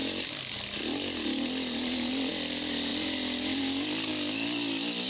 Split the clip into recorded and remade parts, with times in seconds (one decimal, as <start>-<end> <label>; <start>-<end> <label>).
0.0-5.1 recorded